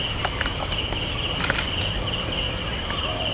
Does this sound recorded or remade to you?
recorded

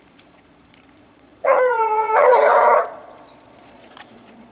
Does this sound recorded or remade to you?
remade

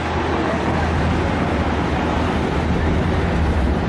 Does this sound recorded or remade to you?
recorded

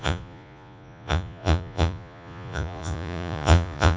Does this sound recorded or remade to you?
remade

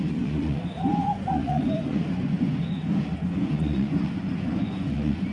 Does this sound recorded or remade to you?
remade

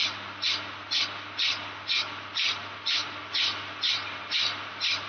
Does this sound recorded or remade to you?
recorded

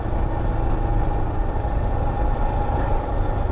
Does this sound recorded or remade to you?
recorded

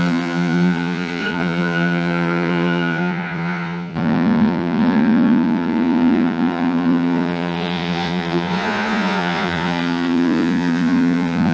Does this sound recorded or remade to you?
remade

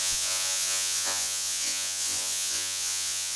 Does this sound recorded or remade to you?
remade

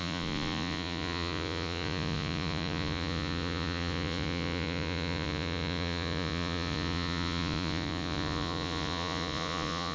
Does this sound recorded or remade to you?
remade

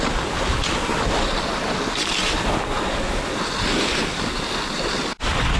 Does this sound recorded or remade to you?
recorded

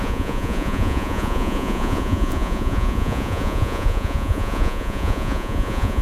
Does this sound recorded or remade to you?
remade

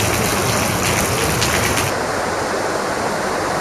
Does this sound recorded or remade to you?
recorded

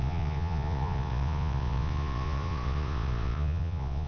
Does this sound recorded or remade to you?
remade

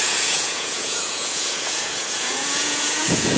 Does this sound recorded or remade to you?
remade